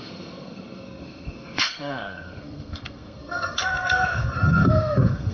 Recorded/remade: remade